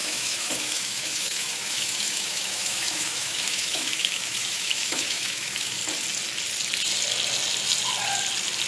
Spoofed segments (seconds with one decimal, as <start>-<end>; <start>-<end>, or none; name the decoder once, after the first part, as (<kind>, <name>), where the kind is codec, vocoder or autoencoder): 0.0-5.8 (autoencoder, DAC-VAE)